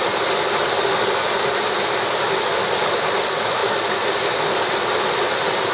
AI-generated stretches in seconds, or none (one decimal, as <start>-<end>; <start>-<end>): none